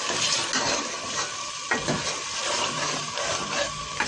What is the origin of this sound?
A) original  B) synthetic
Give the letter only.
A